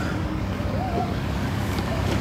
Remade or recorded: remade